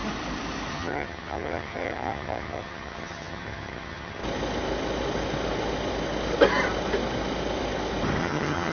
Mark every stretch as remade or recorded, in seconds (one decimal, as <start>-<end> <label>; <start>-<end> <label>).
0.0-0.7 recorded; 0.7-4.2 remade; 4.2-8.2 recorded; 8.2-8.7 remade